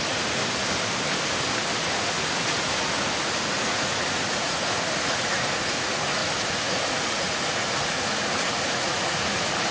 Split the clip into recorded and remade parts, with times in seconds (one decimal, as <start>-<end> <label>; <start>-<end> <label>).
0.0-0.4 remade; 0.4-1.8 recorded; 1.8-9.7 remade